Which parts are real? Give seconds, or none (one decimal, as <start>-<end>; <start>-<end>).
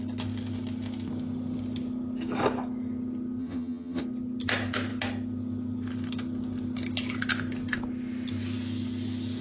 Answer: 0.0-3.4; 4.0-9.4